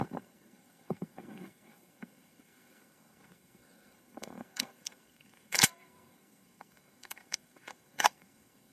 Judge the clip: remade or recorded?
remade